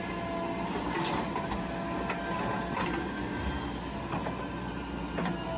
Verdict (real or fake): real